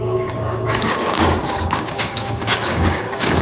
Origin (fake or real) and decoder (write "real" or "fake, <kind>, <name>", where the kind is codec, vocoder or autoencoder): fake, codec, DAC